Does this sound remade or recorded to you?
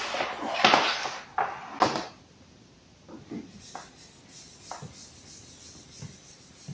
recorded